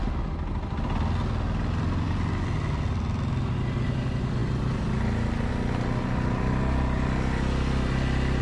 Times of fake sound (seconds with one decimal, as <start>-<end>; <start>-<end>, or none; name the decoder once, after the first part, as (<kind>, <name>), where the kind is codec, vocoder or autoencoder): none